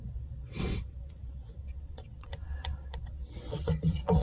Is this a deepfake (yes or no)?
yes